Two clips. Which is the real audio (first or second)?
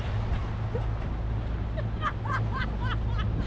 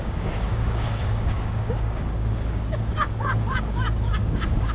first